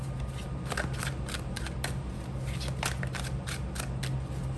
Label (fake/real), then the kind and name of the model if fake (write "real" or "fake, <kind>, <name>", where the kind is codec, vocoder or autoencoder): real